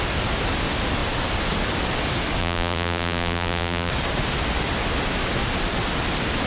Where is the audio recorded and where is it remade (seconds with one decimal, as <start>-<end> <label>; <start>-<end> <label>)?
0.0-2.4 recorded; 2.4-3.9 remade; 3.9-6.5 recorded